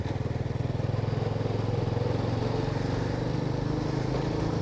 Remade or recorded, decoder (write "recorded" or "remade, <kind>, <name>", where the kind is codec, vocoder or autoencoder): recorded